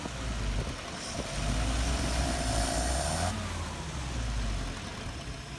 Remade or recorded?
recorded